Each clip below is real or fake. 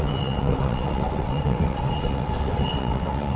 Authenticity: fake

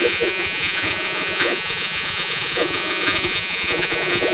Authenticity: fake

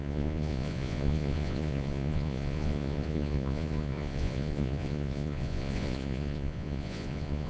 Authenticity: fake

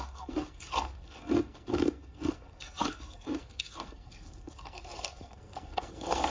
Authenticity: fake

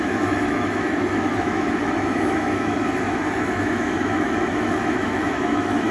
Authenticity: fake